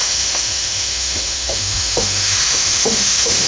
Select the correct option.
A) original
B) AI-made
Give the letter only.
B